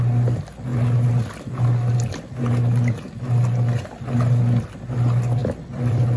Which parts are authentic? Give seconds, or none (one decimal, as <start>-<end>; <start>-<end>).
0.0-5.4